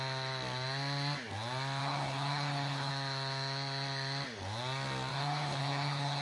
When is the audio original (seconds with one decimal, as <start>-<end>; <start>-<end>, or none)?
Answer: 0.0-1.8; 2.9-5.1